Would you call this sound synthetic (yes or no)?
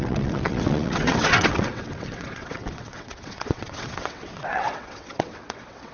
yes